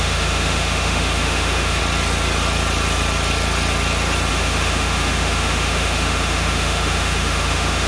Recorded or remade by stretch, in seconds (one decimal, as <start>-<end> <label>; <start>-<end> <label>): 0.0-1.8 remade; 1.8-4.3 recorded; 4.3-7.9 remade